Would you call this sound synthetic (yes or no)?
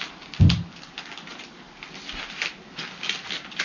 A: no